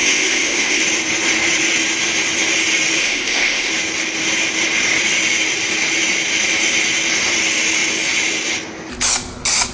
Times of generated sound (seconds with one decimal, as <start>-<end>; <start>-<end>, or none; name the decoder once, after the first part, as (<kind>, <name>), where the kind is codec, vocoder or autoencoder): 0.0-0.8 (codec, ZipCodec); 3.0-3.7